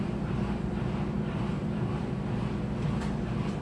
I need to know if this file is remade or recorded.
remade